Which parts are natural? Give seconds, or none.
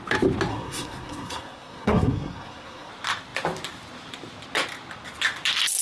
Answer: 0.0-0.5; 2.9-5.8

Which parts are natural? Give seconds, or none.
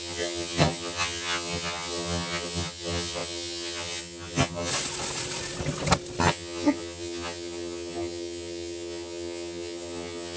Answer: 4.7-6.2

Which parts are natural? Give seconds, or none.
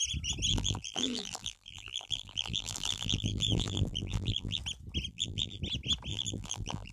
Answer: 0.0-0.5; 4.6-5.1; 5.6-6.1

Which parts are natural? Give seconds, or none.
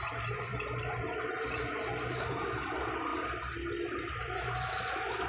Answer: 0.0-5.3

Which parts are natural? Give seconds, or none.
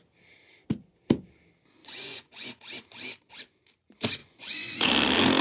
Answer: 0.0-1.8; 2.6-4.2; 4.9-5.4